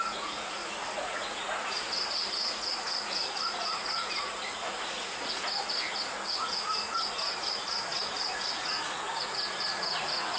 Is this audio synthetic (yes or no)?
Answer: yes